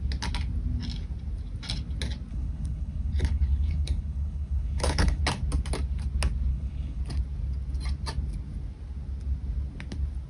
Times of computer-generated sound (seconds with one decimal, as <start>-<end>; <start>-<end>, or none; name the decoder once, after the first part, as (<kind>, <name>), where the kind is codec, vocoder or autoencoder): 2.3-5.2 (codec, HILCodec); 6.5-7.0